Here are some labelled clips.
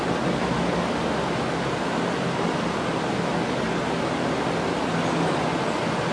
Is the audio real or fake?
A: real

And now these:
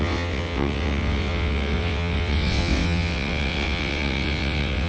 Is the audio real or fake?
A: fake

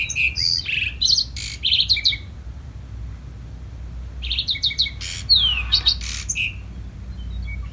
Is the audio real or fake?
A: real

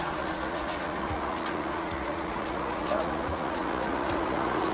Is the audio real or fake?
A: fake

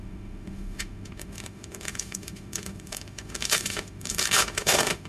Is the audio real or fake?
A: fake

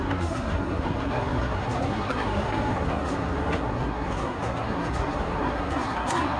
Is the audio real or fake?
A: fake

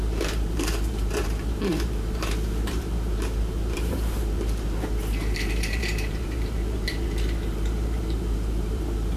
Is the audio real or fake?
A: fake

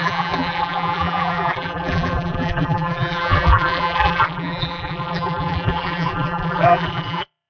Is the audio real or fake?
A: fake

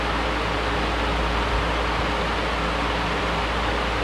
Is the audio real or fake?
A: real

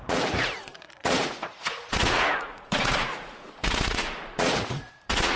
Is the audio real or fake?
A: fake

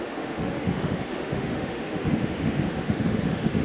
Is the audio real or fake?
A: fake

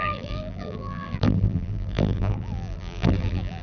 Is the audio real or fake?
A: fake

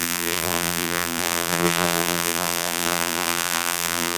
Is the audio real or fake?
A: fake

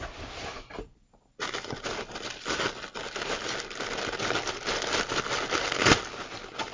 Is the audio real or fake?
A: real